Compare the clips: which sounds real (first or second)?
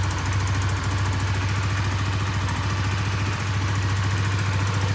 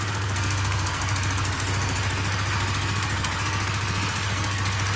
first